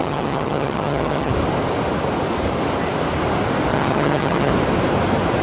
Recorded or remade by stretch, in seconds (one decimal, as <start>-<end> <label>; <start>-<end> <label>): 0.0-1.3 remade; 1.3-3.7 recorded; 3.7-4.5 remade; 4.5-5.4 recorded